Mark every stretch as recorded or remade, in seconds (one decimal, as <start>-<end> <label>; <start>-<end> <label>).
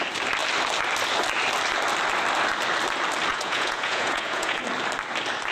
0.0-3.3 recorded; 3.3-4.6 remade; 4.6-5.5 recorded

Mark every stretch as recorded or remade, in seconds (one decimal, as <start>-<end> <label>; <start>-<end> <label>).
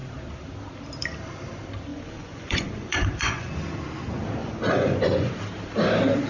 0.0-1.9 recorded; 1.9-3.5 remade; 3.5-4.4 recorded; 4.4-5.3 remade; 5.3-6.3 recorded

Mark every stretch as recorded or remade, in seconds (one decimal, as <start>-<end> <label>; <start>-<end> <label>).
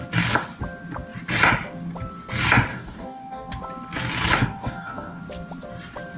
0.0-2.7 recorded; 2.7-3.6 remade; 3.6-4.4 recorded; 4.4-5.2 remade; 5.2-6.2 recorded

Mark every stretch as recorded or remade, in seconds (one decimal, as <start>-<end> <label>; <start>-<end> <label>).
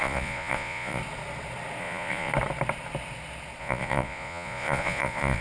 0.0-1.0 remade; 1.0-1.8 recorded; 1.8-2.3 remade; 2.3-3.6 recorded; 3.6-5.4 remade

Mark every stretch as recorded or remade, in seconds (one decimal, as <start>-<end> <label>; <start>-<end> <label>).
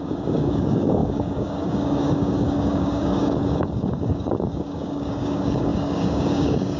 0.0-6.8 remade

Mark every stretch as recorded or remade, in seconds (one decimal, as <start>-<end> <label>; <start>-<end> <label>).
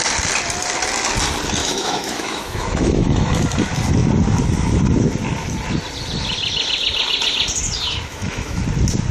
0.0-1.6 recorded; 1.6-3.3 remade; 3.3-8.1 recorded; 8.1-8.6 remade; 8.6-9.1 recorded